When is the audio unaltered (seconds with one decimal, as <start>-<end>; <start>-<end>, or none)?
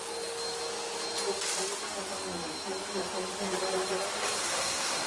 0.0-4.4